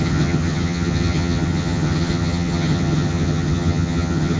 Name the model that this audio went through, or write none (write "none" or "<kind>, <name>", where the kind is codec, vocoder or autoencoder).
vocoder, HiFi-GAN